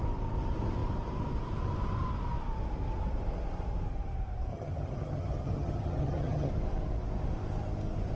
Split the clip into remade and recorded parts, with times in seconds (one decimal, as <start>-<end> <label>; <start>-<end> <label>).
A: 0.0-4.5 recorded; 4.5-6.5 remade; 6.5-8.2 recorded